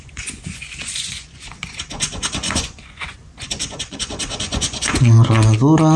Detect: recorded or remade remade